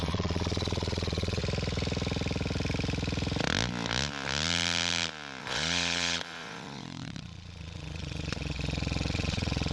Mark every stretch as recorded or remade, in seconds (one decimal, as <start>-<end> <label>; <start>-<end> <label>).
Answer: 0.0-1.4 remade; 1.4-5.4 recorded; 5.4-9.7 remade